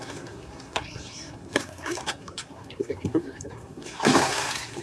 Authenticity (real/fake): fake